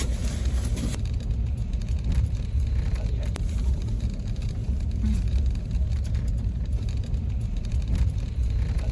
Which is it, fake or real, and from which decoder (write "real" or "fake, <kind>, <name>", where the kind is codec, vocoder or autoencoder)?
fake, vocoder, BigVGAN v2